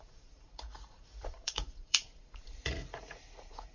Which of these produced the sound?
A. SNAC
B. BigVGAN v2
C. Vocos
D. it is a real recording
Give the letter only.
C